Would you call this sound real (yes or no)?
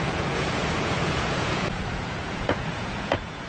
no